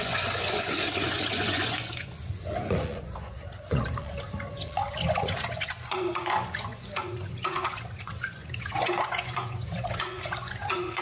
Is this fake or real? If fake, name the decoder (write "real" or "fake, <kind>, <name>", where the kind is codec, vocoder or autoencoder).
fake, vocoder, Vocos